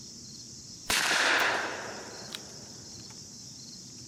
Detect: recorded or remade remade